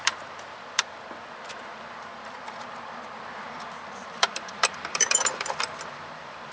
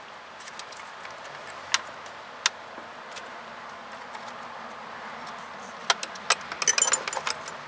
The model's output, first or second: first